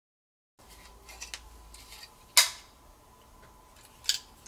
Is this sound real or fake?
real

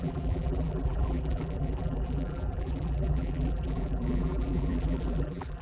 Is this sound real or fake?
fake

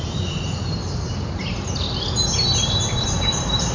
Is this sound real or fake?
fake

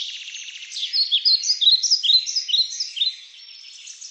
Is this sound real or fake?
real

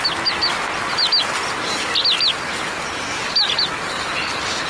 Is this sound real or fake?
real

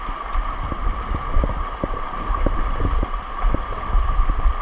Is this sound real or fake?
real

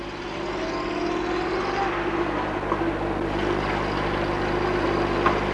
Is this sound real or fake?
real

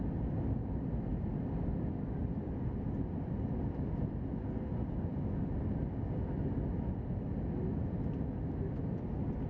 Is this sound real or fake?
real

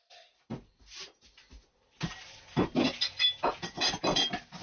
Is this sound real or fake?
real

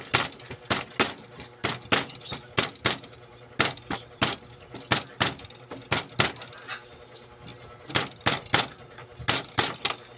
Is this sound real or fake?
real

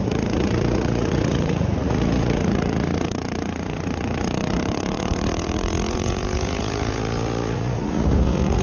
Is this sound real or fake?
fake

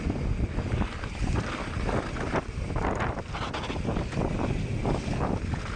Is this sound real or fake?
real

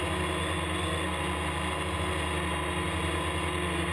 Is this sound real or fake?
real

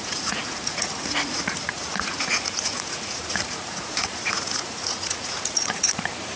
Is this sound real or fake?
fake